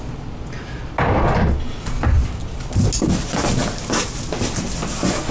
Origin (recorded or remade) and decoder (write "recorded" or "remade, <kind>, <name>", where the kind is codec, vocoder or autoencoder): recorded